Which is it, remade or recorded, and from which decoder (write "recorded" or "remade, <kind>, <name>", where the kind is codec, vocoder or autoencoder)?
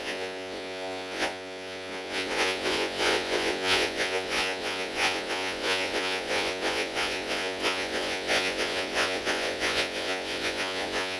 remade, vocoder, Vocos